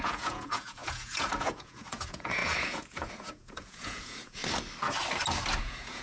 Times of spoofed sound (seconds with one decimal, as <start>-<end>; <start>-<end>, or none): 0.0-4.4; 5.6-6.0